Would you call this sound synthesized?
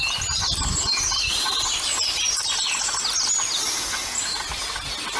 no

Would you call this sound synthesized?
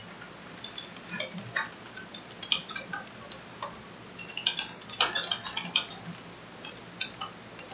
no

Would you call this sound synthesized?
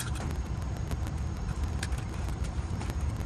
yes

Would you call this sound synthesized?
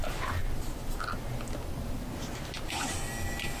no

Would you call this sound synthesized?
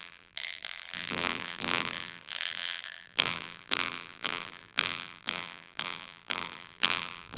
yes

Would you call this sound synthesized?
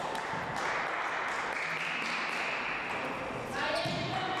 no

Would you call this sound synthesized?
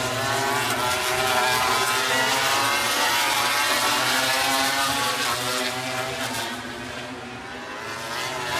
no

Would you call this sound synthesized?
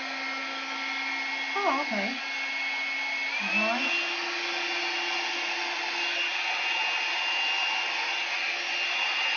no